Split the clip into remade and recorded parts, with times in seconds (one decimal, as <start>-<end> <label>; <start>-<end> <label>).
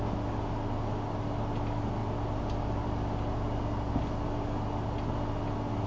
0.0-5.9 recorded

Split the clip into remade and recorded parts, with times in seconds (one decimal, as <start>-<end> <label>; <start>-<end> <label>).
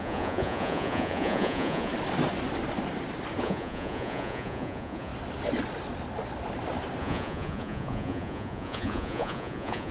0.0-1.9 remade; 1.9-3.4 recorded; 3.4-5.1 remade; 5.1-7.0 recorded; 7.0-9.9 remade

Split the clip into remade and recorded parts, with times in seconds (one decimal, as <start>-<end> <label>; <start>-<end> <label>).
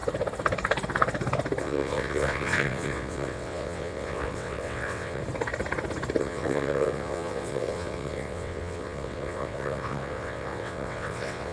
0.0-1.6 recorded; 1.6-5.2 remade; 5.2-6.2 recorded; 6.2-11.5 remade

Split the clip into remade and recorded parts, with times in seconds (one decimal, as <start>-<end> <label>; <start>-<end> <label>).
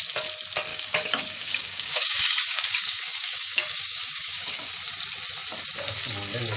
0.0-0.7 recorded; 0.7-4.7 remade; 4.7-6.6 recorded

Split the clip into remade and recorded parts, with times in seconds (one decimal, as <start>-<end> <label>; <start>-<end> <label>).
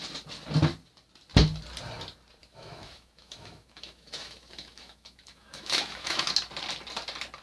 0.0-2.4 recorded; 2.4-6.3 remade; 6.3-7.4 recorded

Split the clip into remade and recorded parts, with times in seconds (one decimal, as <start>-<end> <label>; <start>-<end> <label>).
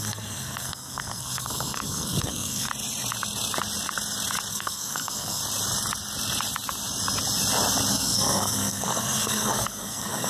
0.0-2.7 remade; 2.7-4.5 recorded; 4.5-5.4 remade; 5.4-7.9 recorded; 7.9-10.3 remade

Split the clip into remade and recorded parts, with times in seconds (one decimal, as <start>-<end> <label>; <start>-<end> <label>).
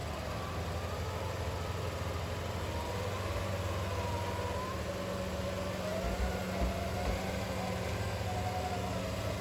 0.0-9.4 recorded